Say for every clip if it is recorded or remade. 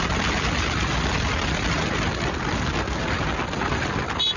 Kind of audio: recorded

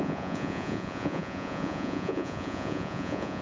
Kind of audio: remade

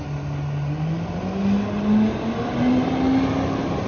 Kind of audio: recorded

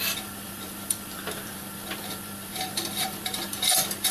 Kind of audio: remade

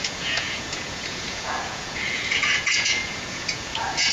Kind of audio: remade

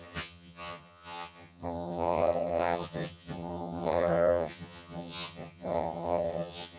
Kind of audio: remade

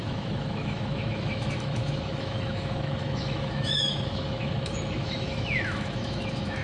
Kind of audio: remade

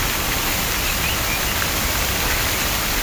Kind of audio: recorded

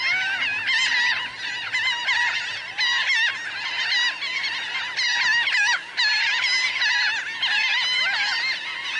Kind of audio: recorded